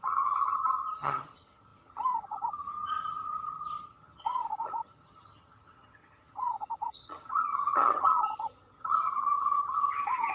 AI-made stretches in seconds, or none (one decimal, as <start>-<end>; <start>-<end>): 0.0-10.3